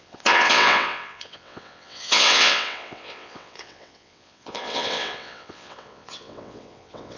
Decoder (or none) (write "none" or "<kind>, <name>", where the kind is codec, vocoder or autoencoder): vocoder, WaveNeXt